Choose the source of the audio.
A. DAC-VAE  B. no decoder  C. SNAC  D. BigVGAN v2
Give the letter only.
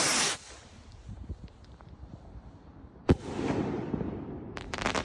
D